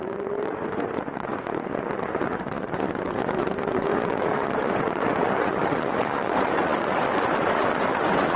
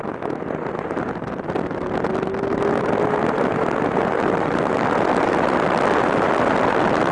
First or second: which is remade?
first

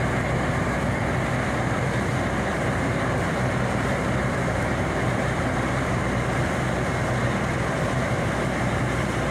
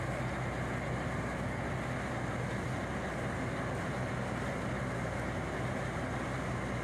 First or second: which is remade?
first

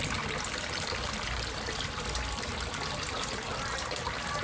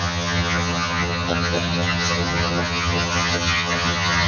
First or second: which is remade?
second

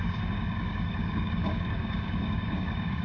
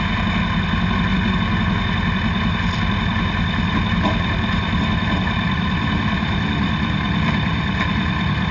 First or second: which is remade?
first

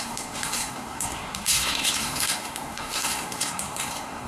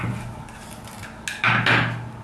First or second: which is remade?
first